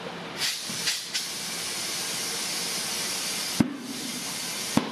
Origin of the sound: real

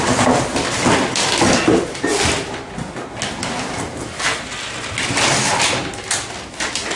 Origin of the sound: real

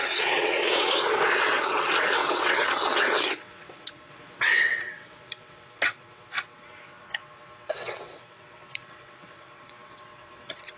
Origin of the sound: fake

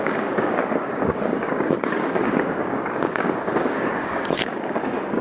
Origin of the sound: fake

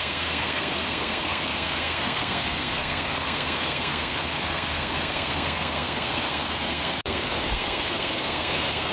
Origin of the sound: fake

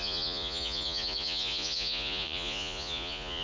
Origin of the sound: fake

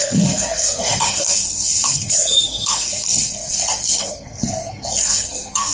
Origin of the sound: fake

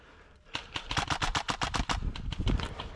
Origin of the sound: real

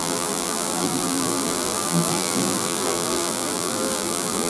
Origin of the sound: fake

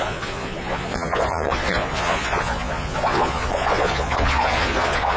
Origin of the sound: fake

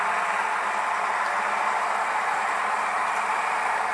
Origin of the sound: real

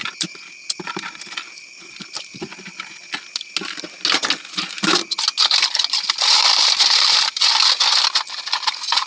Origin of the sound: real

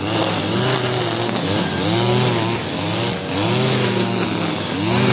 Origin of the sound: real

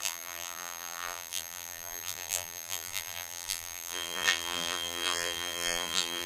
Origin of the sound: fake